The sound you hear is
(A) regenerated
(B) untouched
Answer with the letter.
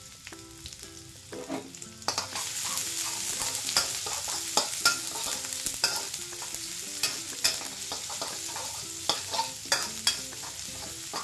B